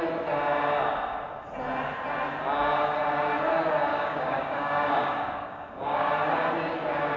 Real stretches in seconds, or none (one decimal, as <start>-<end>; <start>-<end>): 0.0-3.9; 6.1-7.2